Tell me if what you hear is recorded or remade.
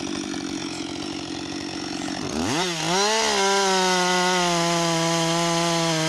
recorded